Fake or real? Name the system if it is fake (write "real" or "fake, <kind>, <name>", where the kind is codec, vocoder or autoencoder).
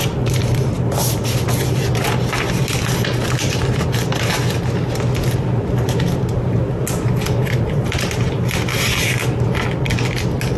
real